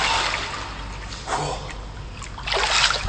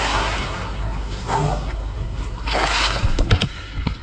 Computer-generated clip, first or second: second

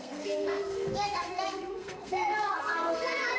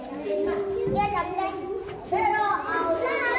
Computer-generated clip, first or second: first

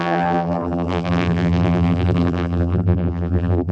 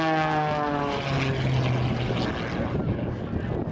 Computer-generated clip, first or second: first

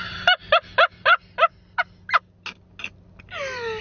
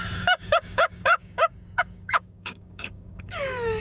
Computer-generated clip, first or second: second